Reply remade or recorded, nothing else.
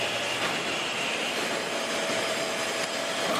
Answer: remade